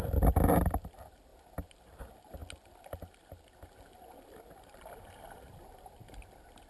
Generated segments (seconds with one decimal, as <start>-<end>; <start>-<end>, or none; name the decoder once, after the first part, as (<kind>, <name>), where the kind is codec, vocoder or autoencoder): none